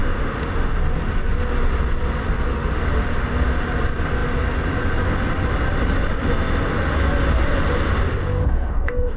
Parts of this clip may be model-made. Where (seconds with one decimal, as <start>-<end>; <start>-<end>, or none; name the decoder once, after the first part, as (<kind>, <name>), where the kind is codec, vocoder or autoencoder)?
0.0-0.8 (autoencoder, DAC-VAE); 8.4-9.2